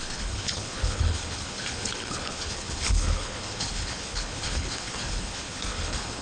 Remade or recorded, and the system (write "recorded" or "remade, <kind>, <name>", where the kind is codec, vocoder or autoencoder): remade, codec, HILCodec